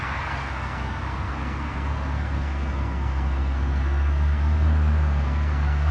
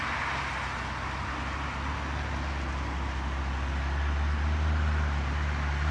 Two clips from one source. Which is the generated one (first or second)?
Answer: first